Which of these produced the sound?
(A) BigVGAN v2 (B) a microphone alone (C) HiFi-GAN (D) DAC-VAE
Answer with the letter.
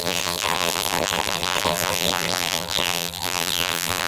A